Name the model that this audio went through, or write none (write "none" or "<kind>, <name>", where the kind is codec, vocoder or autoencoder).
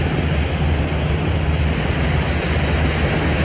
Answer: none